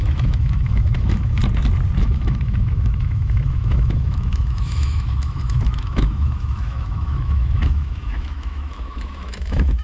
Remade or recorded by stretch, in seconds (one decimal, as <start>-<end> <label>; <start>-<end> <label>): 0.0-1.4 remade; 1.4-2.0 recorded; 2.0-9.8 remade